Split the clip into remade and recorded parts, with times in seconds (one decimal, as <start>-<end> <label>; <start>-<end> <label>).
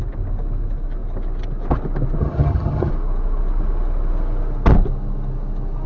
0.0-2.2 recorded; 2.2-2.9 remade; 2.9-5.9 recorded